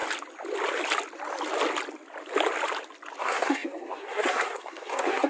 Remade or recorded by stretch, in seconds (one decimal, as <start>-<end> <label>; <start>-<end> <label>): 0.0-3.2 recorded; 3.2-5.3 remade